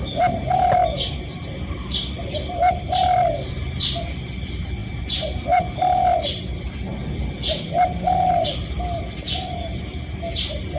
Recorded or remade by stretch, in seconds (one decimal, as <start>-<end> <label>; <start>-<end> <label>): 0.0-0.8 remade; 0.8-1.7 recorded; 1.7-10.8 remade